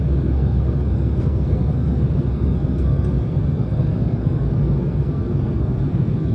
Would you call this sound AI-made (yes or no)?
yes